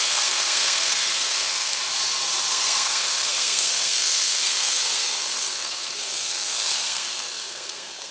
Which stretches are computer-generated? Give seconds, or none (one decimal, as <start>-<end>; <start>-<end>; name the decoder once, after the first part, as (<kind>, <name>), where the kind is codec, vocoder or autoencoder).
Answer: 0.0-1.8 (codec, SNAC); 2.5-8.1